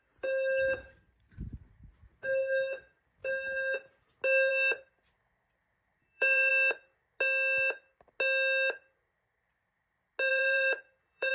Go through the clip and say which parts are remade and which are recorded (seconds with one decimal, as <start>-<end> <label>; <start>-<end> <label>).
0.0-6.0 recorded; 6.0-6.5 remade; 6.5-10.3 recorded; 10.3-11.3 remade